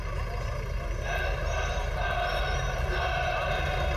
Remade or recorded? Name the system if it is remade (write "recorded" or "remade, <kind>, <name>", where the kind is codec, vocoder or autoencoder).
recorded